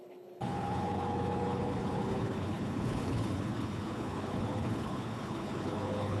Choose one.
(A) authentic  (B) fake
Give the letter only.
B